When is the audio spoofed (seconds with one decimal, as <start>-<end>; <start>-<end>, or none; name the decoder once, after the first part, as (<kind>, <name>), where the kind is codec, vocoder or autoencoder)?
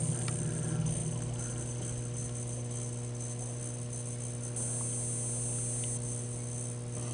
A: none